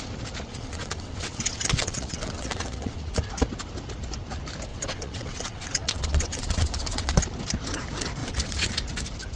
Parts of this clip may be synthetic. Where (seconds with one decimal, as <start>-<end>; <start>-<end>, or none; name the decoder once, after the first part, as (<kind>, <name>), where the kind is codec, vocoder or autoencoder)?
0.5-3.1 (vocoder, WaveNeXt); 4.7-7.2; 8.2-8.7